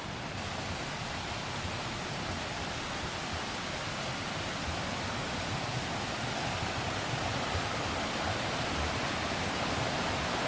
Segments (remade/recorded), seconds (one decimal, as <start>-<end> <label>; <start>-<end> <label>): 0.0-10.5 recorded